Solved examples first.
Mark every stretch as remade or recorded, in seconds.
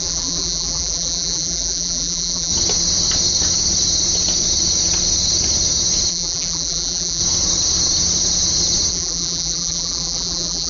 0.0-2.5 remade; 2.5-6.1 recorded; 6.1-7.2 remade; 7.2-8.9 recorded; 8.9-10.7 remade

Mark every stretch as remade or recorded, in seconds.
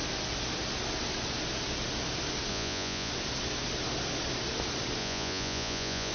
0.0-2.5 recorded; 2.5-3.1 remade; 3.1-5.0 recorded; 5.0-6.1 remade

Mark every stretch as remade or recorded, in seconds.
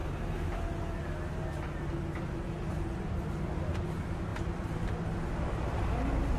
0.0-6.4 recorded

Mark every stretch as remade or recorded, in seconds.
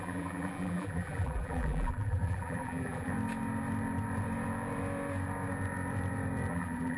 0.0-3.1 remade; 3.1-6.5 recorded; 6.5-7.0 remade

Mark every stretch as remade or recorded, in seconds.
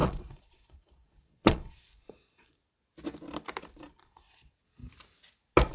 0.0-2.6 remade; 2.6-4.0 recorded; 4.0-4.8 remade; 4.8-5.7 recorded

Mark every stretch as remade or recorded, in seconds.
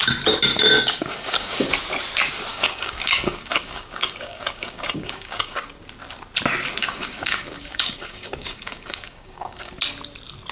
0.0-0.5 recorded; 0.5-1.7 remade; 1.7-2.5 recorded; 2.5-5.7 remade; 5.7-6.8 recorded; 6.8-9.7 remade; 9.7-10.5 recorded